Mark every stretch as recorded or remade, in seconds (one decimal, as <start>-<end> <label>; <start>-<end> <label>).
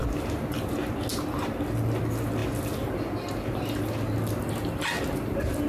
0.0-5.7 recorded